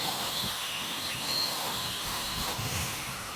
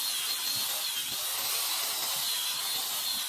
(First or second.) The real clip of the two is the second